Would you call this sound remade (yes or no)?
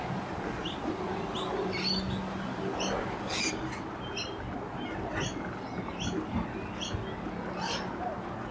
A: no